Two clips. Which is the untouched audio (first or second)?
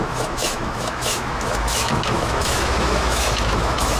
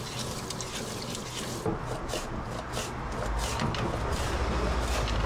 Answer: second